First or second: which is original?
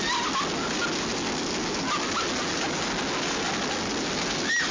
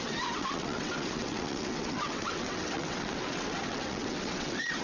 first